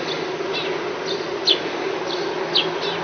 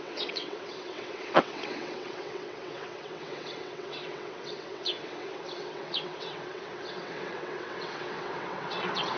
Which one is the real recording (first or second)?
first